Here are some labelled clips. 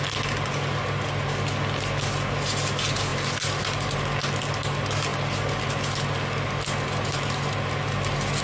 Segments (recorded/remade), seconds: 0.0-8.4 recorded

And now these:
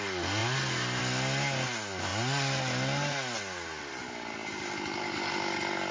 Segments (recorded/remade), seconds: 0.0-4.4 recorded; 4.4-5.3 remade; 5.3-5.9 recorded

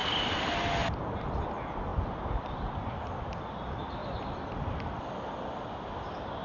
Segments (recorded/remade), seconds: 0.0-6.4 recorded

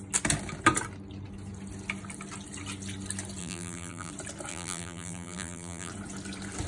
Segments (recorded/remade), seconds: 0.0-3.4 recorded; 3.4-4.1 remade; 4.1-4.5 recorded; 4.5-5.9 remade; 5.9-6.7 recorded

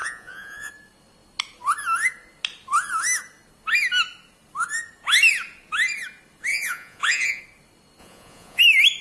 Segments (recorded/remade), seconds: 0.0-0.7 remade; 0.7-6.5 recorded; 6.5-7.4 remade; 7.4-8.0 recorded; 8.0-8.6 remade; 8.6-9.0 recorded

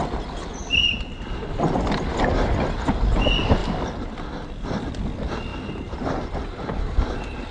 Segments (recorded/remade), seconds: 0.0-0.6 recorded; 0.6-2.1 remade; 2.1-3.6 recorded; 3.6-4.9 remade; 4.9-7.5 recorded